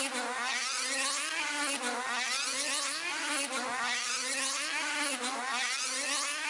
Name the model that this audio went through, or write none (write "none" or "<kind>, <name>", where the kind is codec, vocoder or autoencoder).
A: none